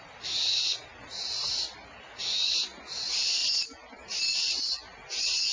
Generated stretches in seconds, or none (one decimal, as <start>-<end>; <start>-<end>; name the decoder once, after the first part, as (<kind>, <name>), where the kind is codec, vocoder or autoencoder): 0.0-5.5 (vocoder, BigVGAN v2)